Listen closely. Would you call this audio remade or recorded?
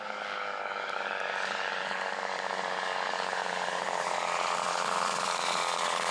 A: remade